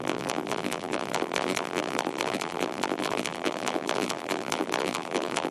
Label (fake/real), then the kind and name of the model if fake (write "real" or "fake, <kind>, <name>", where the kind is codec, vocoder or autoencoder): fake, vocoder, BigVGAN v2